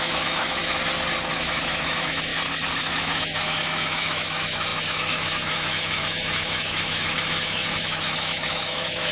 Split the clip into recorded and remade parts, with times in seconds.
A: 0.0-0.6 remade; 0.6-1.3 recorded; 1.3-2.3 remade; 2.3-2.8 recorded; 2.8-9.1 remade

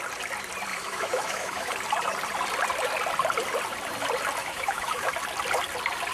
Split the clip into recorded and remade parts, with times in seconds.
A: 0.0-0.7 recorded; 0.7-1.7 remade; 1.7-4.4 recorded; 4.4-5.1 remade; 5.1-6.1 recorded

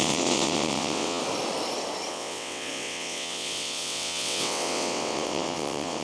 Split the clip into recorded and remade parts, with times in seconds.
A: 0.0-1.2 remade; 1.2-2.1 recorded; 2.1-6.0 remade

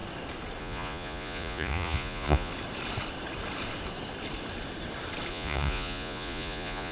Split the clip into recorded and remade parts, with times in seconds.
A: 0.0-0.6 recorded; 0.6-2.5 remade; 2.5-5.3 recorded; 5.3-6.9 remade